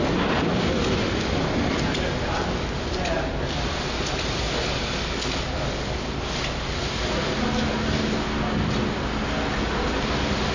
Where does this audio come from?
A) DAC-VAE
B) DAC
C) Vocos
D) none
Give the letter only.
D